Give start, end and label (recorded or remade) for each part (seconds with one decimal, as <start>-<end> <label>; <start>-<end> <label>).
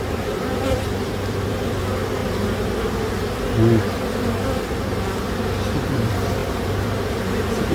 0.0-2.2 remade; 2.2-5.9 recorded; 5.9-7.7 remade